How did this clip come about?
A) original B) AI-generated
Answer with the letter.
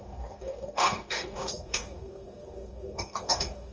B